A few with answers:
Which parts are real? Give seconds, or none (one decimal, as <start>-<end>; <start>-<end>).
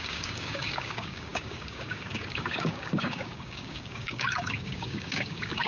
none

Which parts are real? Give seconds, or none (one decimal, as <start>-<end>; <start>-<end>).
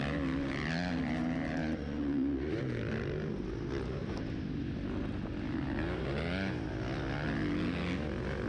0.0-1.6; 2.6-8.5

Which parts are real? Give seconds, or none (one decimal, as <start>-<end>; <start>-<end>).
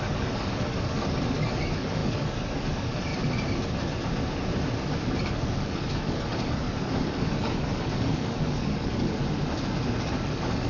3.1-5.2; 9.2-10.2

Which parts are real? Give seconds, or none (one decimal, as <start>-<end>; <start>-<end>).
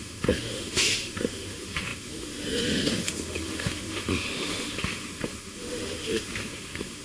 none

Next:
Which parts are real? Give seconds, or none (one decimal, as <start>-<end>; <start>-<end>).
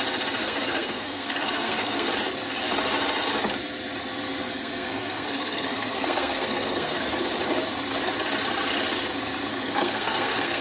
0.0-0.4; 2.1-4.4; 7.1-9.5